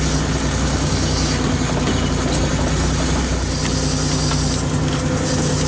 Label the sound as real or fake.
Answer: real